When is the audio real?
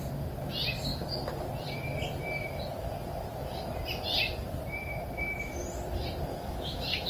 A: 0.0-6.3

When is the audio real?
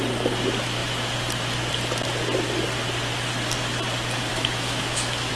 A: 0.0-4.3